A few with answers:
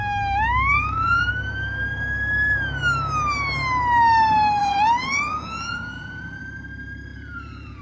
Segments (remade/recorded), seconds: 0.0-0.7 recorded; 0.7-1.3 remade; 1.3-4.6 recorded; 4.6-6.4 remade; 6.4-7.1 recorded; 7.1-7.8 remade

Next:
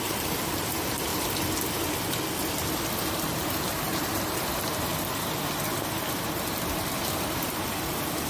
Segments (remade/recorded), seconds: 0.0-1.1 remade; 1.1-3.1 recorded; 3.1-4.9 remade; 4.9-6.9 recorded; 6.9-8.3 remade

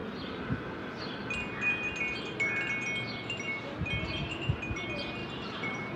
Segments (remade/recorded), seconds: 0.0-5.2 recorded; 5.2-6.0 remade

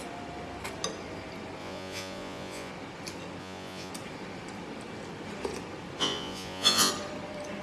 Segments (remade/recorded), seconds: 0.0-1.6 recorded; 1.6-2.7 remade; 2.7-3.4 recorded; 3.4-3.9 remade; 3.9-6.0 recorded; 6.0-6.9 remade; 6.9-7.6 recorded

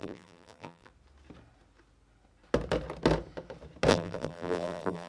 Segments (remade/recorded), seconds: 0.0-0.9 remade; 0.9-3.9 recorded; 3.9-5.1 remade

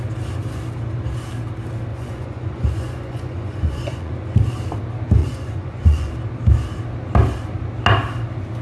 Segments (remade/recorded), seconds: 0.0-1.9 recorded; 1.9-4.1 remade; 4.1-5.2 recorded; 5.2-6.1 remade; 6.1-8.6 recorded

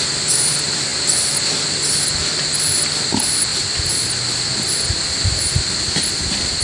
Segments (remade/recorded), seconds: 0.0-6.6 recorded